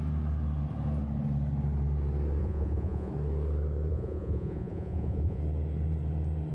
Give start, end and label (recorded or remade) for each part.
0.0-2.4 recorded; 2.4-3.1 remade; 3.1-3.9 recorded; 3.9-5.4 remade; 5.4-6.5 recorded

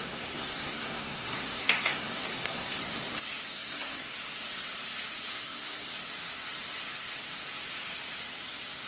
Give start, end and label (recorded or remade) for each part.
0.0-2.8 remade; 2.8-3.5 recorded; 3.5-4.1 remade; 4.1-5.3 recorded; 5.3-5.9 remade; 5.9-8.9 recorded

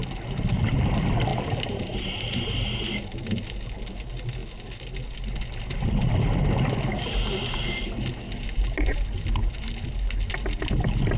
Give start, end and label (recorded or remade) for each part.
0.0-1.3 recorded; 1.3-2.4 remade; 2.4-11.2 recorded

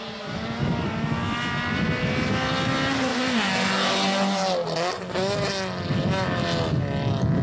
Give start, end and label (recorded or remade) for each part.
0.0-7.4 recorded

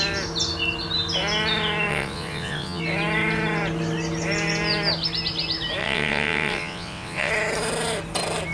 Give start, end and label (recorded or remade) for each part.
0.0-1.9 recorded; 1.9-2.8 remade; 2.8-5.8 recorded; 5.8-7.3 remade; 7.3-8.5 recorded

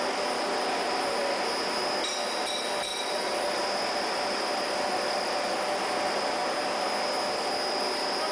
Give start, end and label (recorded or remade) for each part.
0.0-2.9 recorded; 2.9-3.6 remade; 3.6-8.3 recorded

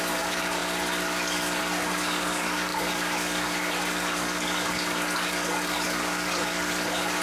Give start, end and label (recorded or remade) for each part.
0.0-7.2 remade

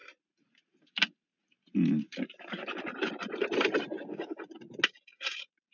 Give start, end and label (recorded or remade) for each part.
0.0-3.1 remade; 3.1-5.7 recorded